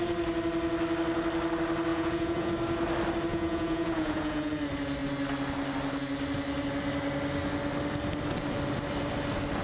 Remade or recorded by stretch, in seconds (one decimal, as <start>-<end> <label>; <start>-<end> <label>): 0.0-1.9 recorded; 1.9-2.5 remade; 2.5-3.3 recorded; 3.3-4.5 remade; 4.5-9.6 recorded

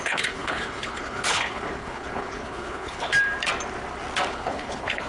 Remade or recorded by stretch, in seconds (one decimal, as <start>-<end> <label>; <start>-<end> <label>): 0.0-3.1 remade; 3.1-4.3 recorded; 4.3-5.1 remade

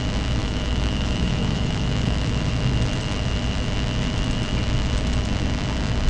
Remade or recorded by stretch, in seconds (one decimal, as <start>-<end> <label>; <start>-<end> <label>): 0.0-0.4 recorded; 0.4-2.3 remade; 2.3-6.1 recorded

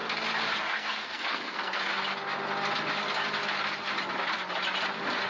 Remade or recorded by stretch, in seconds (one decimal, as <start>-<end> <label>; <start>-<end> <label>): 0.0-0.6 recorded; 0.6-1.9 remade; 1.9-5.3 recorded

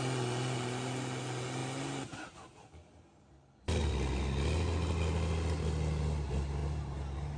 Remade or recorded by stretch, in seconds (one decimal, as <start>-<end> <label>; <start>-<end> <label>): 0.0-7.4 recorded

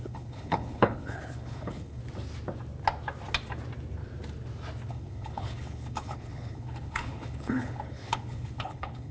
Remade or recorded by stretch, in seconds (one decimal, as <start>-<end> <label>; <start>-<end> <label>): 0.0-2.0 remade; 2.0-4.9 recorded; 4.9-9.1 remade